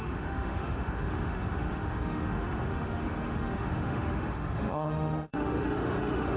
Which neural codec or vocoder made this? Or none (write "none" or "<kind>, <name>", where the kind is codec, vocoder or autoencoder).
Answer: autoencoder, DAC-VAE